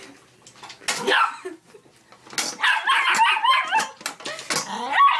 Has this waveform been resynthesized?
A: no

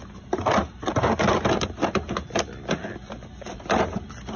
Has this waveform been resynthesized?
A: no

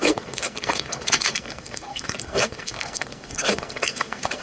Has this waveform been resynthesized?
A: yes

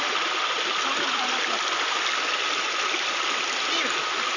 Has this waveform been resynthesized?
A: no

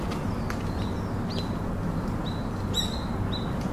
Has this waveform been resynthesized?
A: no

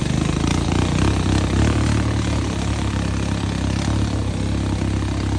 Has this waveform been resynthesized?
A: no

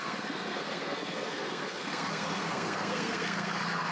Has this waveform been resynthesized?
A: yes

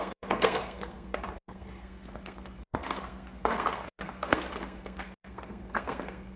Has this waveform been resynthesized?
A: yes